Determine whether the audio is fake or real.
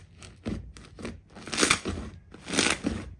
real